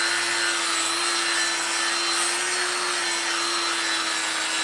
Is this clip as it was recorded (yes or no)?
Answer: yes